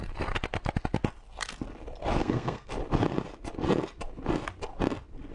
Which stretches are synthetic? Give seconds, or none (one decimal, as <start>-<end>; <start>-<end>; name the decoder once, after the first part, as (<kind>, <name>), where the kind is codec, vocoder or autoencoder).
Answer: 2.2-2.7 (codec, SNAC)